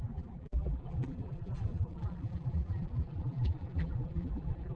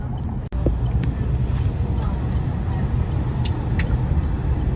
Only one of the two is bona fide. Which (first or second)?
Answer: second